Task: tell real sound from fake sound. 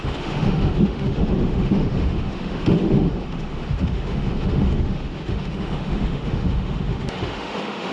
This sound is fake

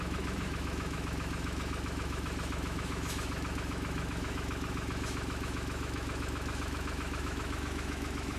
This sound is fake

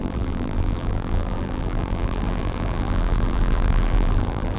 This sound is fake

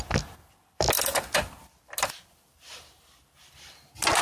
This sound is real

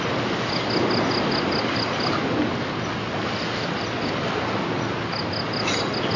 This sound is real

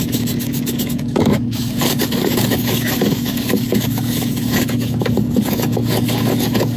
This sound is fake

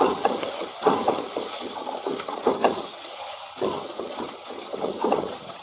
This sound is fake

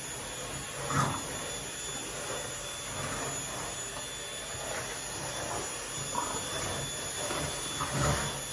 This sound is real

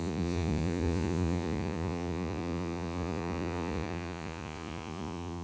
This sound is fake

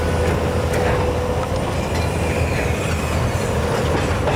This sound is real